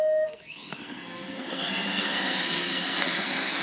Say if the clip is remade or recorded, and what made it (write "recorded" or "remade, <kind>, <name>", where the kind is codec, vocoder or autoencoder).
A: remade, codec, SNAC